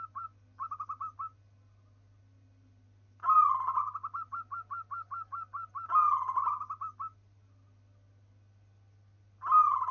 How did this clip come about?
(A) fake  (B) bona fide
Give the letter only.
B